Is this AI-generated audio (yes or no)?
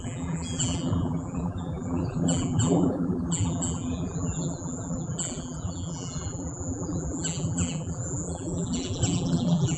yes